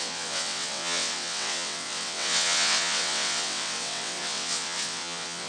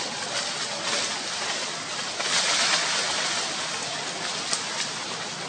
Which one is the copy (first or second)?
first